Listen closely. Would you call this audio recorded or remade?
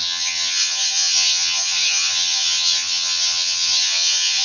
remade